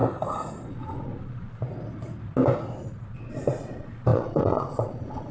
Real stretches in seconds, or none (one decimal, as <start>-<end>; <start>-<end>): 0.0-0.7; 1.6-3.1